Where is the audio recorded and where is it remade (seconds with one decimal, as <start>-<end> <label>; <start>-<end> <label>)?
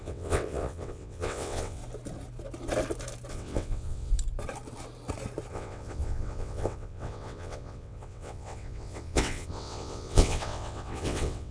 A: 0.0-1.8 remade; 1.8-3.3 recorded; 3.3-4.1 remade; 4.1-5.5 recorded; 5.5-11.5 remade